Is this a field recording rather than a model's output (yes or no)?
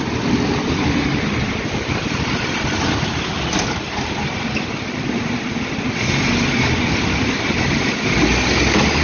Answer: yes